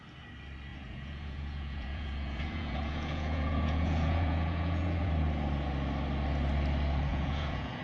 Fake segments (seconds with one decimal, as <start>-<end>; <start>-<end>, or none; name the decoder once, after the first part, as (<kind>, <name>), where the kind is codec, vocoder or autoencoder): 0.7-5.1 (vocoder, Vocos); 7.1-7.8